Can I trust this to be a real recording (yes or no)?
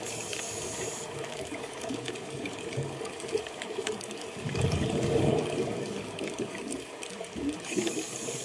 no